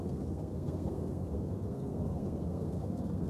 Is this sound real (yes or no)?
no